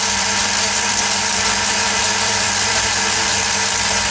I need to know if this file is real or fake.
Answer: fake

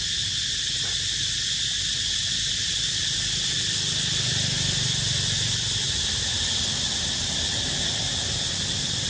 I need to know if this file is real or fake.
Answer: real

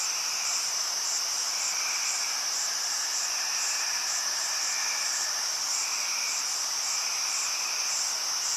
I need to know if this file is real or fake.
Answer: fake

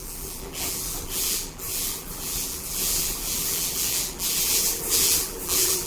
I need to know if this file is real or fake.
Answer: fake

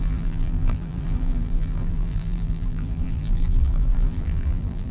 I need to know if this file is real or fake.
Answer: fake